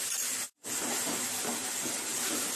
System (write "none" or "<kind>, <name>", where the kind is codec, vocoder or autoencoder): vocoder, BigVGAN v2